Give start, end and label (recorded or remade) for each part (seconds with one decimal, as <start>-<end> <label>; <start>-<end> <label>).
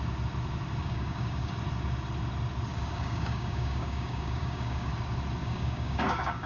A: 0.0-0.8 recorded; 0.8-1.5 remade; 1.5-2.7 recorded; 2.7-4.9 remade; 4.9-5.4 recorded; 5.4-6.5 remade